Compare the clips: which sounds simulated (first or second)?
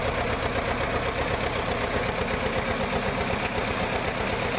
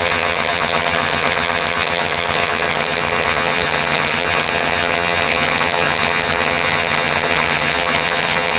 second